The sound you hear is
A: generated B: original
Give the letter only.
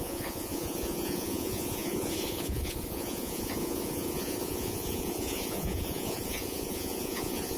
A